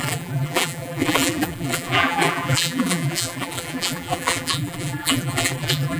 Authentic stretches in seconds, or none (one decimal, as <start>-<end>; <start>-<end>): none